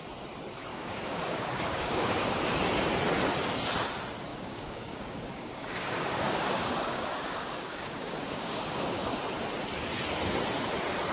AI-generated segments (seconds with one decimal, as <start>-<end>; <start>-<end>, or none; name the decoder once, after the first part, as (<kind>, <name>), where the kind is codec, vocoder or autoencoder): 0.7-2.4 (codec, DAC); 4.3-9.2